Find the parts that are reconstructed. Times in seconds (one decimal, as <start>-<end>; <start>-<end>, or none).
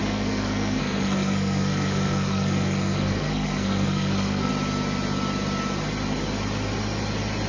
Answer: 0.0-4.5